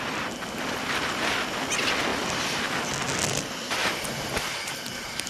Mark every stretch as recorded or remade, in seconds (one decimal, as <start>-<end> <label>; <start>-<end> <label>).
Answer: 0.0-5.3 recorded